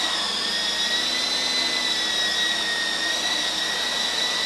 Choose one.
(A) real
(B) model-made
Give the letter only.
A